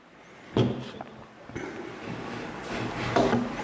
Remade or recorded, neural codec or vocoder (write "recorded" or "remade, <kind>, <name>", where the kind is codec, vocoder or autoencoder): recorded